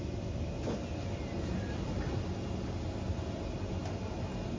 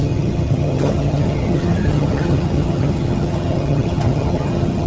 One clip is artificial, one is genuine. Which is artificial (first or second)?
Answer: second